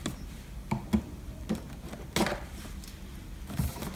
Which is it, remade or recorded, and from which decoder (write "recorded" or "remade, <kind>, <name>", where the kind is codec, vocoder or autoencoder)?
recorded